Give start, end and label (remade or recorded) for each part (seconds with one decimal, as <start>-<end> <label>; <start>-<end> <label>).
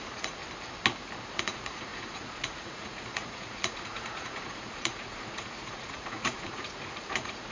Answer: 0.0-0.4 remade; 0.4-1.4 recorded; 1.4-7.5 remade